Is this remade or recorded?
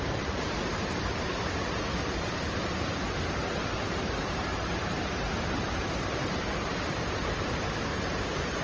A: remade